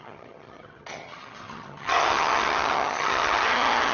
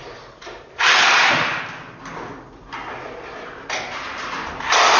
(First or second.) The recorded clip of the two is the second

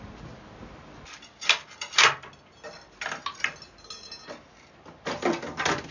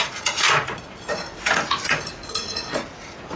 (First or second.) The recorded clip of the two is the first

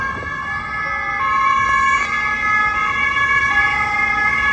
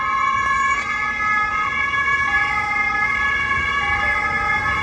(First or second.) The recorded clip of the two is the first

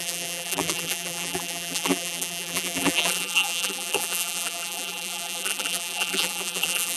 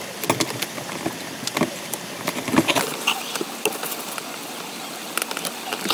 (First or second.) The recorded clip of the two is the second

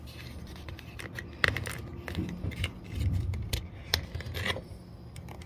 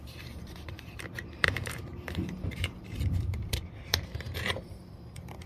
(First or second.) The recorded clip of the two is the first